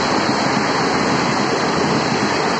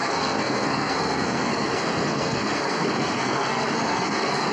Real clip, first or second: first